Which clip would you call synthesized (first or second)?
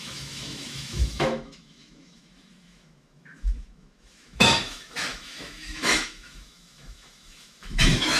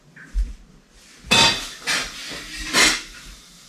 first